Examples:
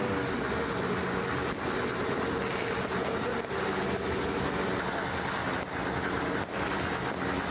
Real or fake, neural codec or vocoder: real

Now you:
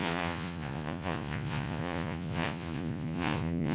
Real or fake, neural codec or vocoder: fake, vocoder, Vocos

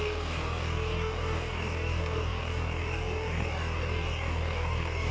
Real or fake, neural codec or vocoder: fake, codec, DAC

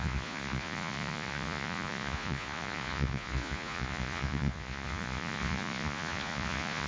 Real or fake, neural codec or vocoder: fake, vocoder, Vocos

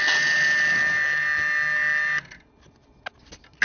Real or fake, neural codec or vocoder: real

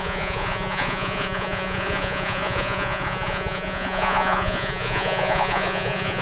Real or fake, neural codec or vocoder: fake, vocoder, Vocos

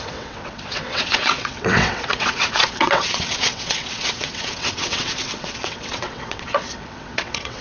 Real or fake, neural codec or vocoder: fake, vocoder, WaveNeXt